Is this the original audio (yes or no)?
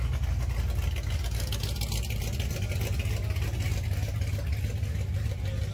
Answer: yes